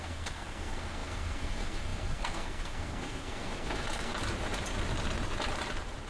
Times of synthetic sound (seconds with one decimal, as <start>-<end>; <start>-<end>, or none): 0.0-4.1